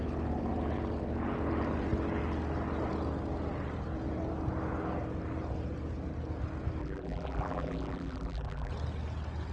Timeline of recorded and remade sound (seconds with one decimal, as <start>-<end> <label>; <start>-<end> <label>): 0.0-6.8 recorded; 6.8-8.7 remade; 8.7-9.5 recorded